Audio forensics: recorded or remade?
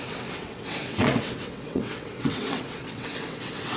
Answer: remade